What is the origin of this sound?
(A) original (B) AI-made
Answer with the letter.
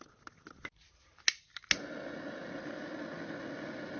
A